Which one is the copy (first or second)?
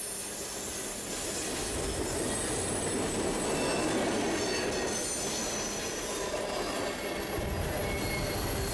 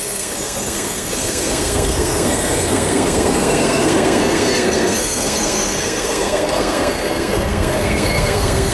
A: second